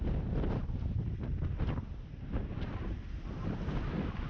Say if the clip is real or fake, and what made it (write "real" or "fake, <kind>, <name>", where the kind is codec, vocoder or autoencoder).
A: real